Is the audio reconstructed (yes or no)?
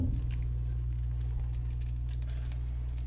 no